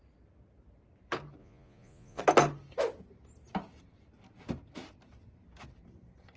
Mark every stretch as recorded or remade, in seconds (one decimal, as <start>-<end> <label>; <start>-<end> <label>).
0.0-1.4 recorded; 1.4-2.2 remade; 2.2-6.4 recorded